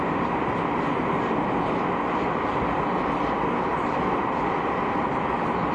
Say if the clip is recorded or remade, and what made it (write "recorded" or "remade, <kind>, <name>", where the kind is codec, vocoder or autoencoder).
recorded